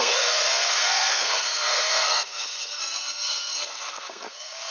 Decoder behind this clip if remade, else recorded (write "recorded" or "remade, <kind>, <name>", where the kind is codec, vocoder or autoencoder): remade, codec, SNAC